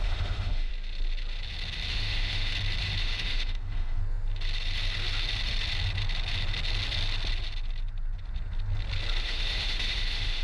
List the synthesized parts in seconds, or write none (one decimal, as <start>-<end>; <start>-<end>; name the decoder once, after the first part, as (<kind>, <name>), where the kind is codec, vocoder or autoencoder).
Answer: 0.0-0.7 (autoencoder, DAC-VAE); 1.9-2.5; 3.0-4.0; 9.2-10.4